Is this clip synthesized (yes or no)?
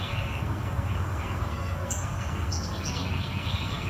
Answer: yes